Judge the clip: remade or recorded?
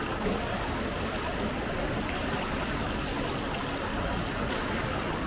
recorded